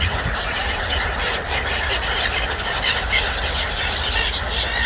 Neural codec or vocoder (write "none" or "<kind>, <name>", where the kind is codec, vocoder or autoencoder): none